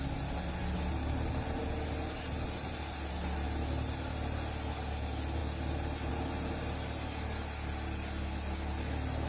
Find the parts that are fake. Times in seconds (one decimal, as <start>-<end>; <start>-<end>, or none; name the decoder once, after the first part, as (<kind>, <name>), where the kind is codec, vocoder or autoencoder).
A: none